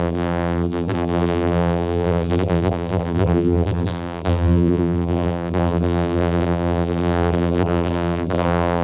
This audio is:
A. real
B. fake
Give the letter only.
B